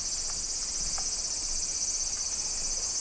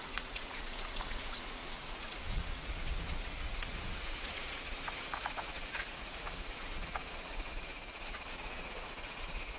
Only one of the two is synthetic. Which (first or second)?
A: second